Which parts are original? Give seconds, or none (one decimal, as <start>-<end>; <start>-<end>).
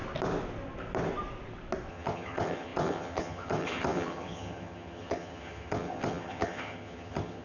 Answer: 0.0-1.9